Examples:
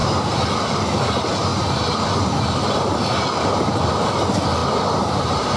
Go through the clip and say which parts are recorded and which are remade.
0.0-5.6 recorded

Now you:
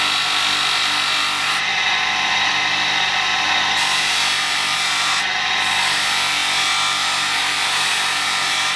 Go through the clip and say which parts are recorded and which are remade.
0.0-8.8 recorded